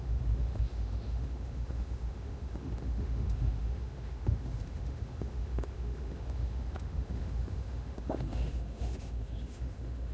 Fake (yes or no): yes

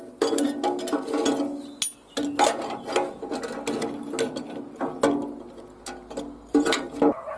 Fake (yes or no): no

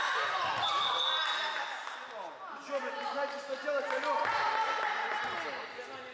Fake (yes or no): no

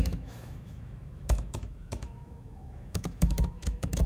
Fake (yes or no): yes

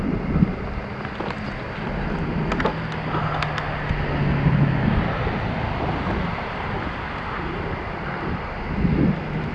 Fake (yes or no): no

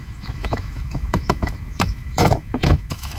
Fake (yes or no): yes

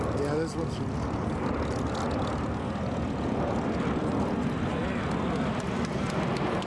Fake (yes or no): no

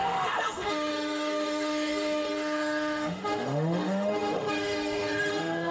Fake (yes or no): yes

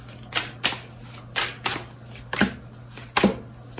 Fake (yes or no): no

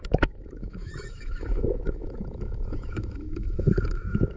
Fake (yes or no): yes